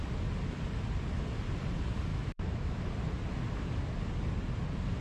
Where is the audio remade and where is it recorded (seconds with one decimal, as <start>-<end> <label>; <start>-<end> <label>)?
0.0-2.1 recorded; 2.1-2.8 remade; 2.8-5.0 recorded